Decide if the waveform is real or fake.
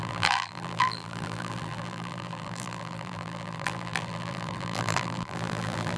fake